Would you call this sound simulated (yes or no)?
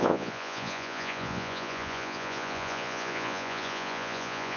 yes